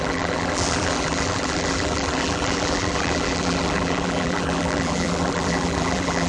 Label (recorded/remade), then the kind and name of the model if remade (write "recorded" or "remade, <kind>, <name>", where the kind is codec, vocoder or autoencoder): remade, vocoder, BigVGAN v2